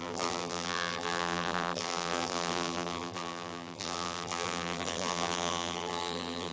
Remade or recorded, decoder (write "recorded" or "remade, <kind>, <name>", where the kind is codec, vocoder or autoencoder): remade, vocoder, BigVGAN v2